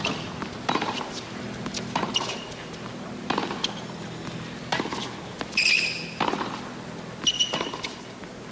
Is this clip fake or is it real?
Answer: real